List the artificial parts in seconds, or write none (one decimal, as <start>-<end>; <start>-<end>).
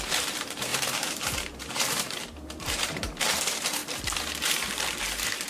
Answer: 0.0-3.8; 4.5-5.5